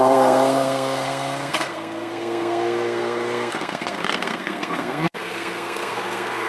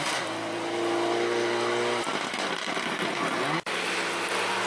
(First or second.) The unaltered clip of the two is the second